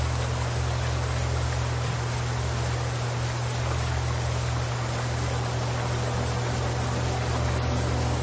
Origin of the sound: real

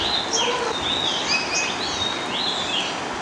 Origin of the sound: real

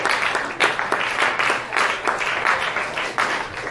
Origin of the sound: fake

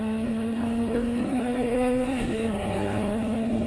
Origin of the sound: fake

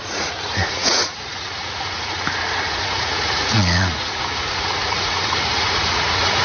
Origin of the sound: fake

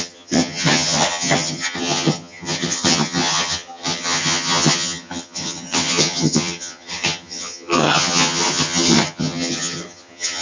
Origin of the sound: fake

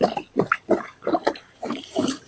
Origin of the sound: fake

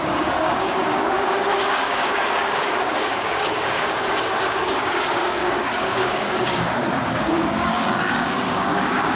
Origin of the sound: fake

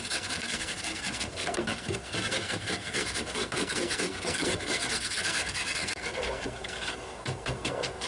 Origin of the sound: fake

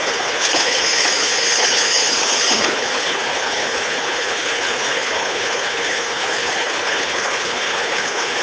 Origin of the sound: fake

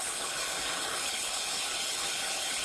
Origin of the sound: fake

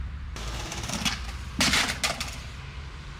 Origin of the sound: real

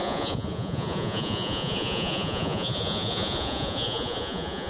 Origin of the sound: fake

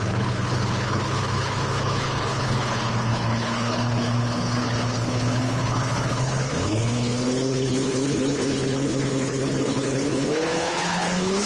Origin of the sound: fake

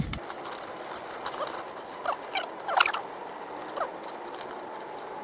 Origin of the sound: fake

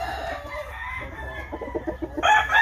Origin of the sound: real